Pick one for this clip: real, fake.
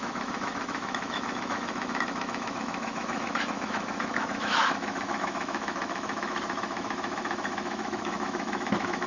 fake